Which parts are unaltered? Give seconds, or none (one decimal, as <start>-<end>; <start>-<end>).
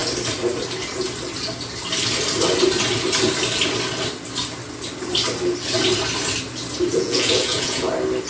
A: 0.0-6.9; 7.9-8.3